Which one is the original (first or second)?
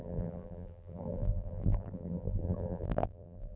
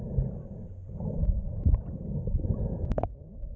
second